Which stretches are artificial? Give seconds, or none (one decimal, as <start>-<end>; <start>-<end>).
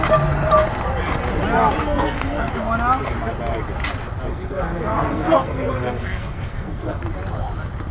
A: 1.8-2.5; 4.3-7.0